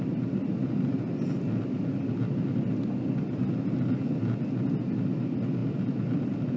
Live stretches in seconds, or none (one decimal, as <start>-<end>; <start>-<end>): 0.0-6.6